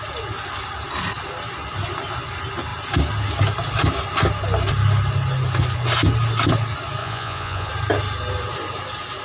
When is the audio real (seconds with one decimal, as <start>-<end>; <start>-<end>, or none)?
0.0-7.0; 7.7-9.2